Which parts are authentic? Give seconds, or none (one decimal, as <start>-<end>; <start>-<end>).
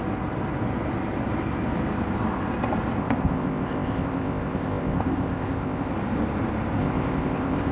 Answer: 0.0-3.0; 5.9-6.8